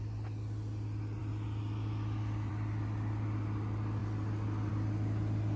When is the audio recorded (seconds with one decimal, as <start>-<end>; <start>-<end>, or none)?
0.0-5.6